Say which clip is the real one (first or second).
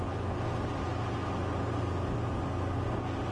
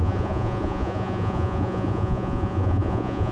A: first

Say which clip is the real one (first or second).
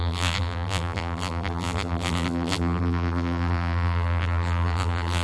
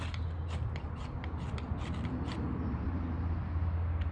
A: second